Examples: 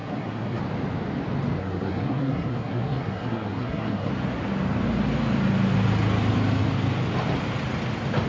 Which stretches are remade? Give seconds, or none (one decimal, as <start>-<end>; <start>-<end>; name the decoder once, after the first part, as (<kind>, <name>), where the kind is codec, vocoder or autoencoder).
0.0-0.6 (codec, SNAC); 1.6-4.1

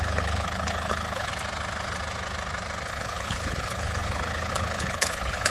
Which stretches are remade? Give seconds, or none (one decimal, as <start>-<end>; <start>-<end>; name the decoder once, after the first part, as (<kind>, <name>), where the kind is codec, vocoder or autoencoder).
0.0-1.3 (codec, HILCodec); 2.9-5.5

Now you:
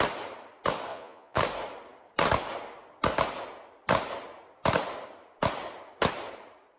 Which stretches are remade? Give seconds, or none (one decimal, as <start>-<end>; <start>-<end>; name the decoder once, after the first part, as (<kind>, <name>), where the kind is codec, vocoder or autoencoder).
0.9-1.4 (vocoder, Vocos)

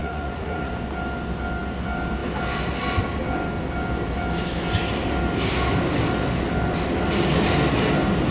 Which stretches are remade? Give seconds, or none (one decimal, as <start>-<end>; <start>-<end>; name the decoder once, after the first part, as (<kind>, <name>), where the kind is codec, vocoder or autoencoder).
0.0-0.7 (vocoder, Vocos)